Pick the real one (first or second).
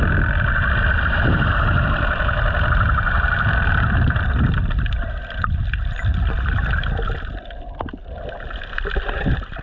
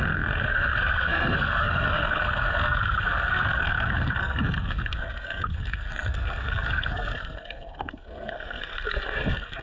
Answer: first